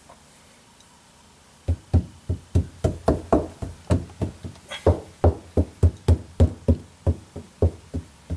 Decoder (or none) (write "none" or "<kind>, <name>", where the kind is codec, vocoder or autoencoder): none